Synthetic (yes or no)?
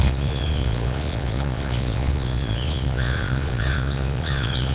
yes